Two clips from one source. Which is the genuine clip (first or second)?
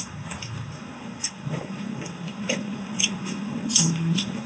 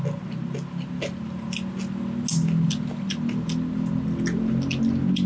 second